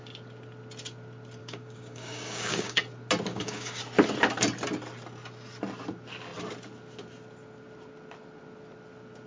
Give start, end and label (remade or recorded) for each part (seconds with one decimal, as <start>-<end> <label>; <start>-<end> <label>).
0.0-1.4 recorded; 1.4-2.8 remade; 2.8-3.3 recorded; 3.3-3.8 remade; 3.8-9.3 recorded